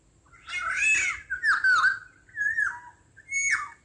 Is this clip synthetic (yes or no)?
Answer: no